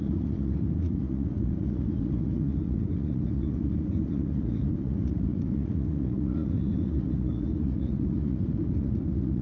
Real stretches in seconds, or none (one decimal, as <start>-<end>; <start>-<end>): none